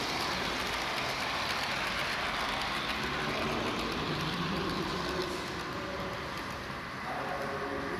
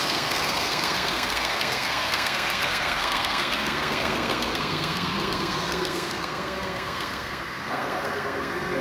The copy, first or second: second